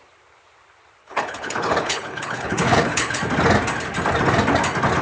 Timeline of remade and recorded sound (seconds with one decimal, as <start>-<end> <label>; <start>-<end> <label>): 0.0-1.0 recorded; 1.0-3.2 remade; 3.2-5.0 recorded